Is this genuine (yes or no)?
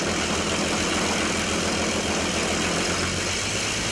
yes